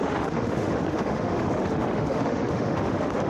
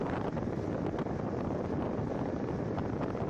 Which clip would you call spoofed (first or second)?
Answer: first